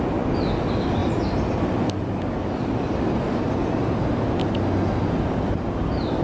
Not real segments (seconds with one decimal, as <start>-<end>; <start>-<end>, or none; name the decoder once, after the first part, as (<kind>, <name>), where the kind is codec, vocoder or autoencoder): 3.6-4.5 (vocoder, BigVGAN v2)